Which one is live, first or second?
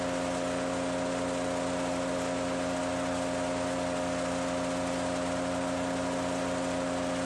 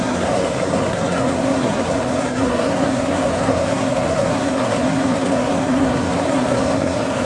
first